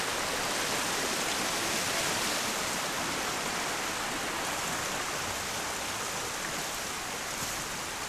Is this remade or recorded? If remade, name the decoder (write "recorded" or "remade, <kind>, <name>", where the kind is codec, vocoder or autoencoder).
recorded